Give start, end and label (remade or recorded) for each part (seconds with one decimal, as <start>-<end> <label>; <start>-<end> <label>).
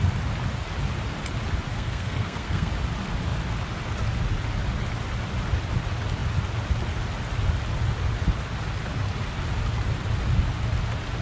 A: 0.0-1.7 recorded; 1.7-2.7 remade; 2.7-11.2 recorded